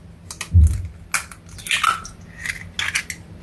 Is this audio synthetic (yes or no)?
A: no